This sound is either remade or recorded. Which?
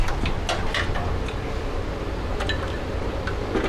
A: recorded